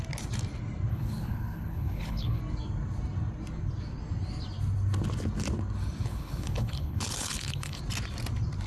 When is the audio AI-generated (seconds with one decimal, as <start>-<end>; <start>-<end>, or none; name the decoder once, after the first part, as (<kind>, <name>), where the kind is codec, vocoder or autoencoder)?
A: 0.9-2.4 (codec, HILCodec); 6.1-7.8